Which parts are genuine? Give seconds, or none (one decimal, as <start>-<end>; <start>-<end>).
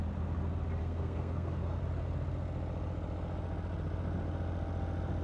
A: 0.0-0.8; 1.8-5.2